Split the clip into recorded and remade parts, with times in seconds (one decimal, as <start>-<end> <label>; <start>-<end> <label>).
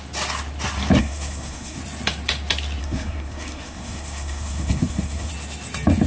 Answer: 0.0-1.0 recorded; 1.0-1.8 remade; 1.8-2.8 recorded; 2.8-5.3 remade; 5.3-6.1 recorded